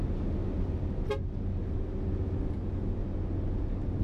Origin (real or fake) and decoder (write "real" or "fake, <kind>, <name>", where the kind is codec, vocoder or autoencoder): real